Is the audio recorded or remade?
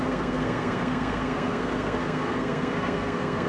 remade